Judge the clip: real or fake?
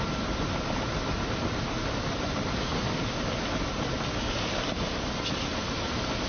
real